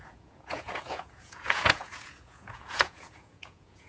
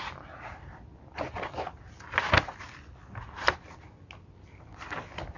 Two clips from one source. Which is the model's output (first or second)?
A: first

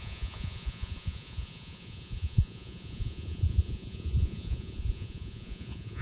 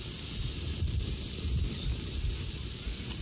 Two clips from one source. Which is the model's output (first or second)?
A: first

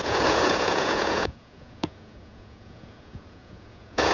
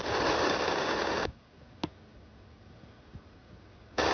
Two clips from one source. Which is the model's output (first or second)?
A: first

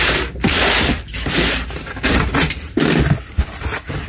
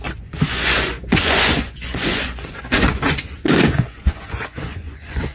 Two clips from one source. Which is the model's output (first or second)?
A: second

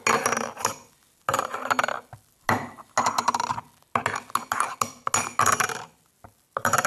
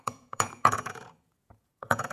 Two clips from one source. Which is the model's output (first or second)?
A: second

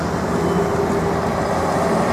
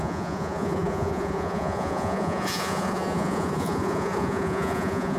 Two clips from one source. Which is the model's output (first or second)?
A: second